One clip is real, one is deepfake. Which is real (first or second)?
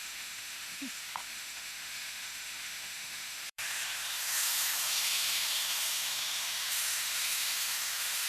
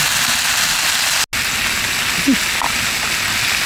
second